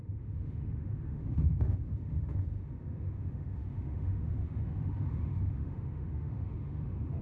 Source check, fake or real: fake